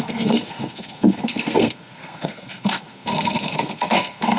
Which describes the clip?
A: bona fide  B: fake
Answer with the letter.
B